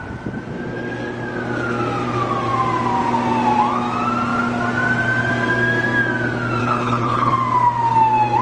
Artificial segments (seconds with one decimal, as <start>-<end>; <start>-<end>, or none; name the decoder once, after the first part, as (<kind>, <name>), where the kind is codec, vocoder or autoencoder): 6.6-7.3 (codec, HILCodec)